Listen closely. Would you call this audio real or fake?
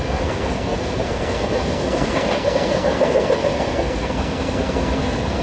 fake